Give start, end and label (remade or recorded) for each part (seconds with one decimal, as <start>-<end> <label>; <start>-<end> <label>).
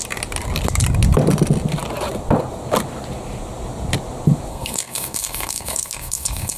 0.0-4.5 recorded; 4.5-6.6 remade